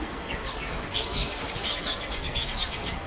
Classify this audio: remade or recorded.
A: remade